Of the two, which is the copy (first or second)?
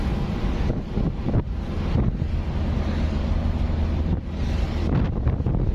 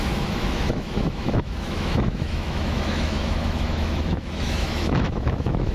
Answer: second